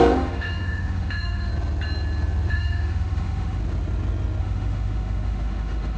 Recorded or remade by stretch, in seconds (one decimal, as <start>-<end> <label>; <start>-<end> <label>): 0.0-1.5 remade; 1.5-2.5 recorded; 2.5-3.6 remade; 3.6-4.4 recorded; 4.4-6.0 remade